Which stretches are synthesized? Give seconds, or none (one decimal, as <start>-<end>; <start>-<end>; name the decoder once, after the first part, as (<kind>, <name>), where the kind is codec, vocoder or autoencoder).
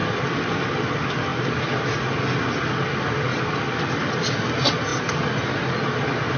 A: none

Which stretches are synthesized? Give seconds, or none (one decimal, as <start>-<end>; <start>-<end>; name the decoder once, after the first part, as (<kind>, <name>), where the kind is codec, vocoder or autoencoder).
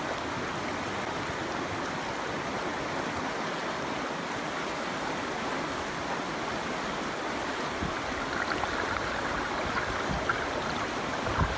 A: none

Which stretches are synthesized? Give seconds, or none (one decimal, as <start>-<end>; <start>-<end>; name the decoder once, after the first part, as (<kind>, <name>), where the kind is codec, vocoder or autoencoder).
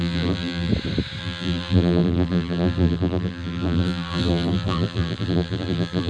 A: 0.0-0.7 (vocoder, BigVGAN v2); 1.2-6.1